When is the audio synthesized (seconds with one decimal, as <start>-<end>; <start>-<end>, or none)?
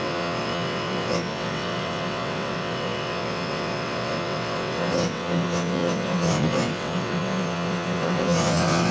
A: 0.0-8.9